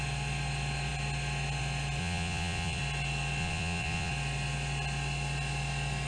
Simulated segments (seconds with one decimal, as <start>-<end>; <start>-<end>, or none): 2.0-2.8; 3.4-4.1